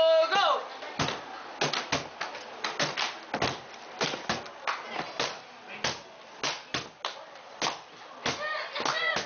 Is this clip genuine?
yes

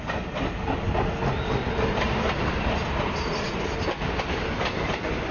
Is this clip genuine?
yes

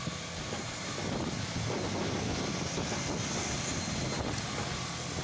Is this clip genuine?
yes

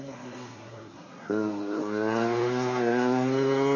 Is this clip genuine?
no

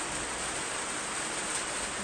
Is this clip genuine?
yes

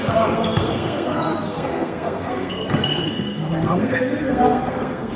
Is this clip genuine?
no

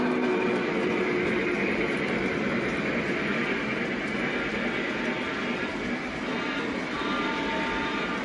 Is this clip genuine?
yes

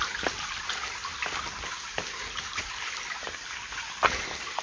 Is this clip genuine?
yes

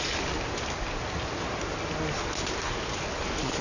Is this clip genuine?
yes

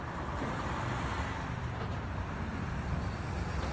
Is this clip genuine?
yes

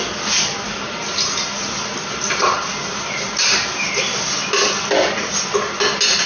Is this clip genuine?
yes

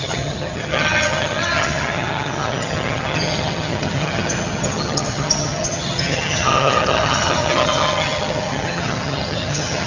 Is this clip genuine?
no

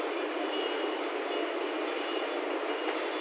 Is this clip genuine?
yes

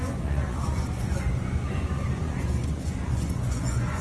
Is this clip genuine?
no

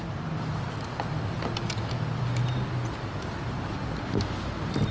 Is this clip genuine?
yes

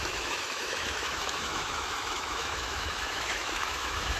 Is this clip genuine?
no